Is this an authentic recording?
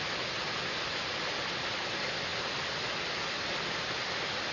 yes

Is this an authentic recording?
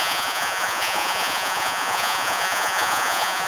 no